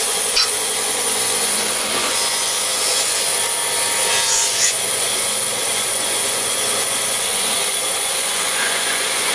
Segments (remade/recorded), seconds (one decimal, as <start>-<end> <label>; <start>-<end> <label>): 0.0-3.3 remade; 3.3-4.2 recorded; 4.2-9.3 remade